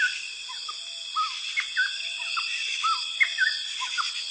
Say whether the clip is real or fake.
real